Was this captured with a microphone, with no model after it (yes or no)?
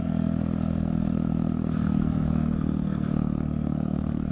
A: no